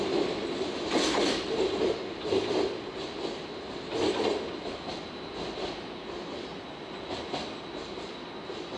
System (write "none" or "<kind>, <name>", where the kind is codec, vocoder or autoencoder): none